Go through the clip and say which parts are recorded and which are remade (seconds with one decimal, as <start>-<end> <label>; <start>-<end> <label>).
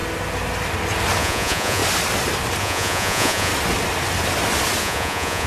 0.0-1.2 recorded; 1.2-1.8 remade; 1.8-2.6 recorded; 2.6-3.5 remade; 3.5-4.8 recorded; 4.8-5.5 remade